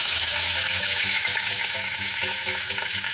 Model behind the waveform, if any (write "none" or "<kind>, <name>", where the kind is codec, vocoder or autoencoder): autoencoder, DAC-VAE